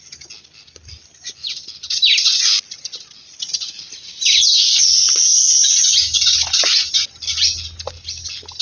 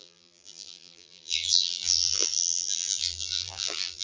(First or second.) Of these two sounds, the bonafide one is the first